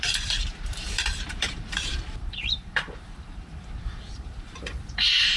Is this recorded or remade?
remade